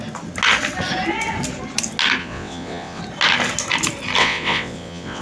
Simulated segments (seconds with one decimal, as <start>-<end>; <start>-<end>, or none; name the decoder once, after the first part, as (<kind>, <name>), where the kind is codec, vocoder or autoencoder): 2.2-3.0 (vocoder, WaveNeXt); 4.2-5.2